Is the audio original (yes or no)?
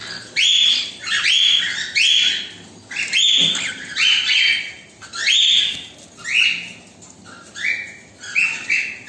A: yes